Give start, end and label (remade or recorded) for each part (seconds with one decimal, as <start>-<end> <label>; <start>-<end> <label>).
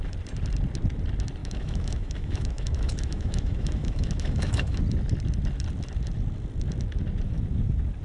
0.0-1.4 recorded; 1.4-4.8 remade; 4.8-8.0 recorded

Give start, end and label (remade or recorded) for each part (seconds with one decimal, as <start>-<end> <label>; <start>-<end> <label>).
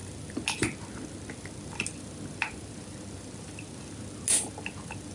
0.0-5.1 recorded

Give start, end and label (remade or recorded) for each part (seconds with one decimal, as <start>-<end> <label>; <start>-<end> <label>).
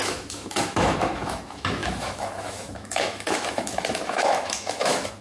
0.0-5.2 remade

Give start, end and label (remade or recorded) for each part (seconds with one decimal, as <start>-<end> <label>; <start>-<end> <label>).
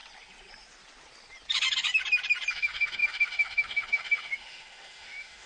0.0-2.5 recorded; 2.5-5.5 remade